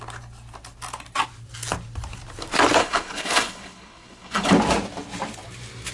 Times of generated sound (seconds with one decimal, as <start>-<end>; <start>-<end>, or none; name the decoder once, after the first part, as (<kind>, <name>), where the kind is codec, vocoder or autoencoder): 2.8-4.5 (codec, HILCodec)